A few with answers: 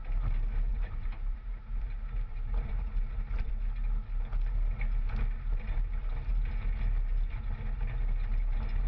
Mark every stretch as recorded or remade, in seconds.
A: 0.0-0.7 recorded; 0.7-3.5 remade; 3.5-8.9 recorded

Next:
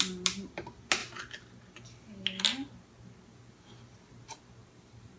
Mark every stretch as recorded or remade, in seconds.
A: 0.0-4.6 recorded; 4.6-5.2 remade

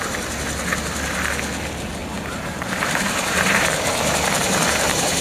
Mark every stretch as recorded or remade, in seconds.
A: 0.0-2.0 recorded; 2.0-5.2 remade

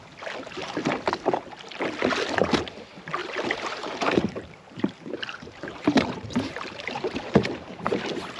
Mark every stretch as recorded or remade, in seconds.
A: 0.0-3.2 recorded; 3.2-7.7 remade; 7.7-8.4 recorded

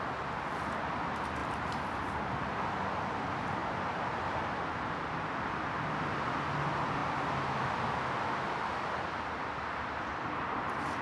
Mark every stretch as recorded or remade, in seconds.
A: 0.0-1.4 recorded; 1.4-2.6 remade; 2.6-3.6 recorded; 3.6-4.9 remade; 4.9-11.0 recorded

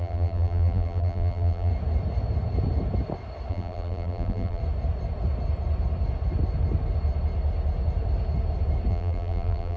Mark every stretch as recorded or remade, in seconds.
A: 0.0-1.7 remade; 1.7-3.5 recorded; 3.5-4.6 remade; 4.6-8.9 recorded; 8.9-9.8 remade